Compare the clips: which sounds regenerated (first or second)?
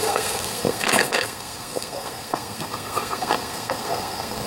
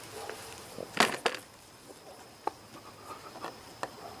first